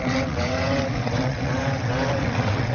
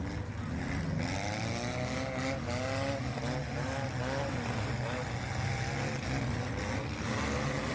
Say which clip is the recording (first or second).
second